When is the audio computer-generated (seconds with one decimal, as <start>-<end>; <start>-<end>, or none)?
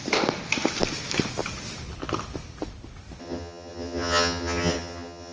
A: 3.2-5.3